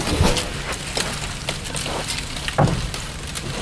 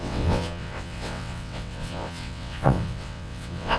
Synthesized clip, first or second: second